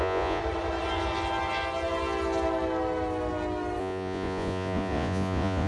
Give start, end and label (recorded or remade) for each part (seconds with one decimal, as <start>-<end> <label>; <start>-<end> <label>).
0.0-0.4 remade; 0.4-3.8 recorded; 3.8-5.7 remade